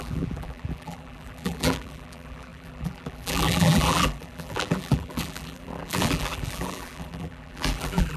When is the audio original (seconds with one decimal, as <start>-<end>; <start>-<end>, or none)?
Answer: none